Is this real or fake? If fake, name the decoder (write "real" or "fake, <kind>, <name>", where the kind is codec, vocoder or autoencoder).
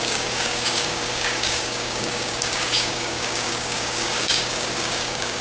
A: fake, codec, DAC